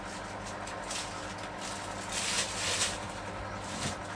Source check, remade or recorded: recorded